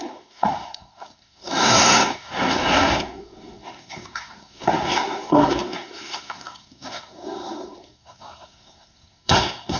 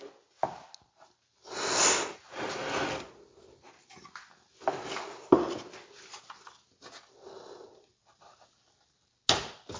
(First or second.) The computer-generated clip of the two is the first